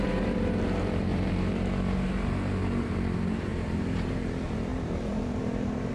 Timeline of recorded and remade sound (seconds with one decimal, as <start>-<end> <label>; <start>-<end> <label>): 0.0-5.9 remade